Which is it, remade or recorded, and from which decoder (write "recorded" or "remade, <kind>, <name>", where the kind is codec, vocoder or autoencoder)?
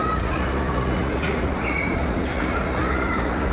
remade, vocoder, Vocos